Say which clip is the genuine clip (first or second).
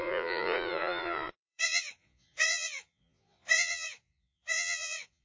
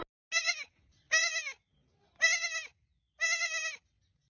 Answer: second